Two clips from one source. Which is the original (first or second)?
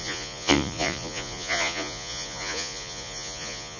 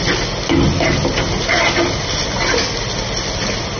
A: second